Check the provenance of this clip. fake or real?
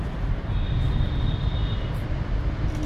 real